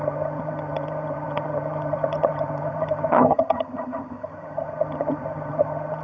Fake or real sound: fake